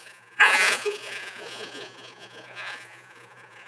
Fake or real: fake